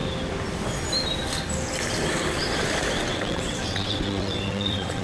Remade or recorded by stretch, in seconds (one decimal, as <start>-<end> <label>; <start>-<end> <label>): 0.0-3.0 recorded; 3.0-5.0 remade